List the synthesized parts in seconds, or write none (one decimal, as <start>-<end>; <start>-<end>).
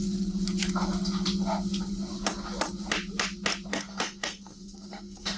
3.7-5.4